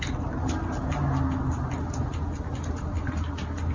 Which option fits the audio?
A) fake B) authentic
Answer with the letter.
B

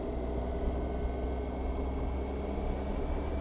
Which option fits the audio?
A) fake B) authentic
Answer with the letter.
B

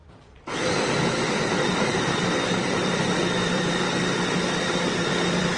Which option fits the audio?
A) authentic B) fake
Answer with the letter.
B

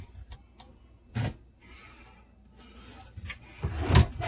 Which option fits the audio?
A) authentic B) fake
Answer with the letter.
A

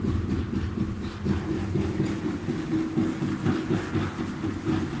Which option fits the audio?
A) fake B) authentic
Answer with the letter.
B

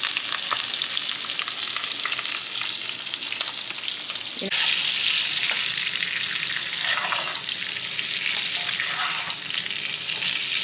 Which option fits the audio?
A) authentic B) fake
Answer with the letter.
A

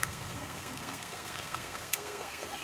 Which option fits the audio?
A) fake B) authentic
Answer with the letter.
A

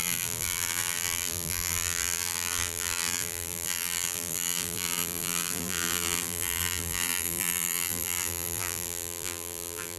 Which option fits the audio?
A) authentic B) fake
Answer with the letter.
B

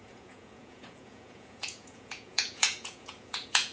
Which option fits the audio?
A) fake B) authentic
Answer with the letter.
A